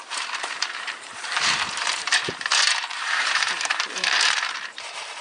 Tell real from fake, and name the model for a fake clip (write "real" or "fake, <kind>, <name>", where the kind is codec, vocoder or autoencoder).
fake, vocoder, BigVGAN v2